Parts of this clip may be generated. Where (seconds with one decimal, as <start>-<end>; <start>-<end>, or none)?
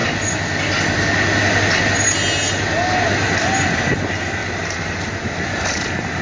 3.7-4.4; 5.0-6.2